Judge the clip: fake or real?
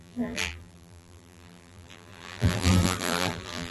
fake